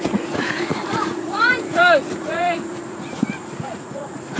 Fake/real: fake